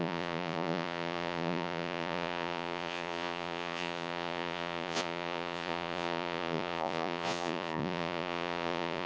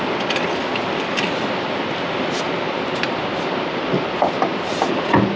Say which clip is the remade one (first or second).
first